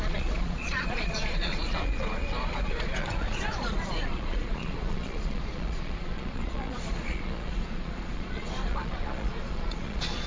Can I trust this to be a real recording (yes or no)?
no